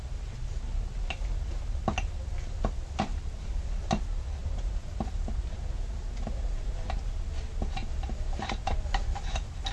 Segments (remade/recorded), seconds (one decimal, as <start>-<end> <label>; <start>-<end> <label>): 0.0-3.1 recorded; 3.1-3.6 remade; 3.6-4.4 recorded; 4.4-5.0 remade; 5.0-7.8 recorded; 7.8-8.5 remade; 8.5-9.7 recorded